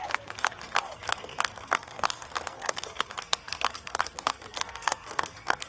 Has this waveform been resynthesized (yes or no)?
yes